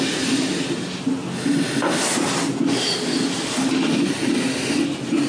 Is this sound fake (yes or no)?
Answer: no